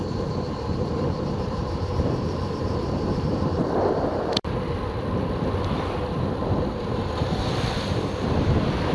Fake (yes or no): yes